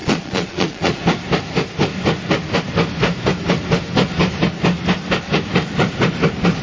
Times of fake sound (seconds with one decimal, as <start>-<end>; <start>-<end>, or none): 0.0-1.0